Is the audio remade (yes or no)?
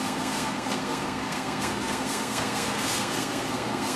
yes